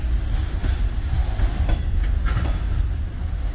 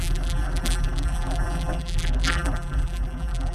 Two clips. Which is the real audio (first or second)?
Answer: first